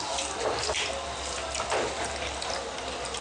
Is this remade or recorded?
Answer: recorded